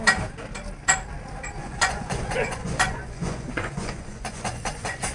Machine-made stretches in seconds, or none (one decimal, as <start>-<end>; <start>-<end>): 1.6-5.1